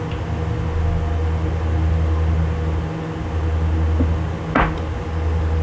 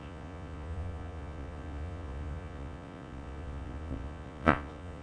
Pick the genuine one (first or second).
first